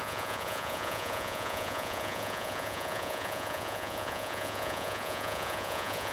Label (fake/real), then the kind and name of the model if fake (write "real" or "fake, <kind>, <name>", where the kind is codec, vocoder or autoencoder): fake, vocoder, Vocos